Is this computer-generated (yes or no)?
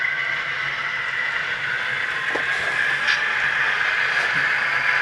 no